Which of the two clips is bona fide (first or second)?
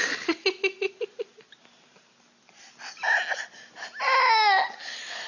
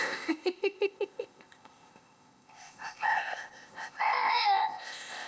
first